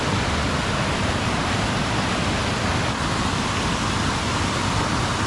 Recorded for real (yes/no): yes